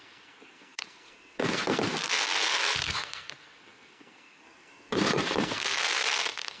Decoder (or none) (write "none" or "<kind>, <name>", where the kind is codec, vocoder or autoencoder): codec, SNAC